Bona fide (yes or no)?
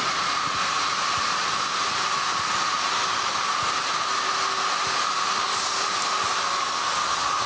yes